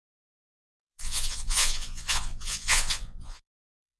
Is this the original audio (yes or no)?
no